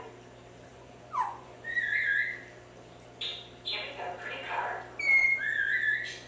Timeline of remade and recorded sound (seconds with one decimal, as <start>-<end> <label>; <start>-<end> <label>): 0.0-0.7 recorded; 0.7-2.0 remade; 2.0-5.2 recorded; 5.2-6.3 remade